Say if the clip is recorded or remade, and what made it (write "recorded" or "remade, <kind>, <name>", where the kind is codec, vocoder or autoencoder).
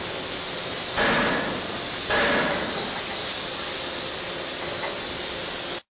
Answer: recorded